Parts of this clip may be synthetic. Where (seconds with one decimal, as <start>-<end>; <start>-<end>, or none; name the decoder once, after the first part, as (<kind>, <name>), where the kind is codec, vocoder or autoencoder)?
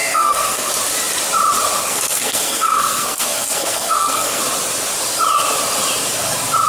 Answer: 0.0-0.7 (codec, SNAC); 1.8-4.4